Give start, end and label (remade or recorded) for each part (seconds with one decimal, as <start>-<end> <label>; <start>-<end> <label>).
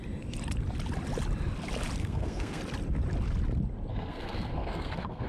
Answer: 0.0-2.0 recorded; 2.0-2.6 remade; 2.6-3.9 recorded; 3.9-5.3 remade